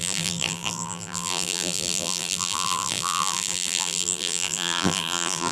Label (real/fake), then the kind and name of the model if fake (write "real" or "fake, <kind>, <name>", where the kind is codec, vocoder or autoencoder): fake, vocoder, BigVGAN v2